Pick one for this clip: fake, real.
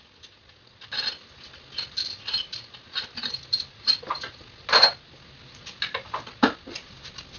real